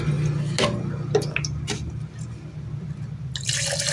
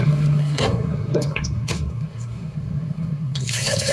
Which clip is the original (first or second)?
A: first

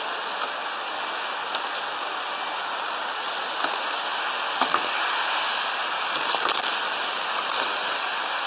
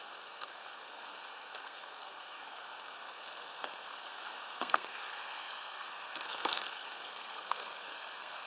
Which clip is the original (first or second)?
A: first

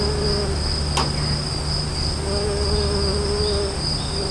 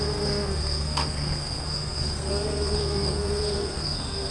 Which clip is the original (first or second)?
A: first